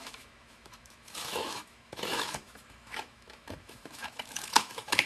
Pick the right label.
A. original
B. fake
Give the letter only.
B